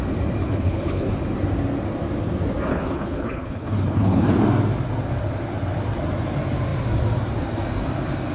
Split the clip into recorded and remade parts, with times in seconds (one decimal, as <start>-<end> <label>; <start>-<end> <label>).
0.0-0.4 recorded; 0.4-1.1 remade; 1.1-2.7 recorded; 2.7-4.4 remade; 4.4-8.3 recorded